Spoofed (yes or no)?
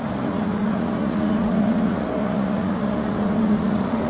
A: yes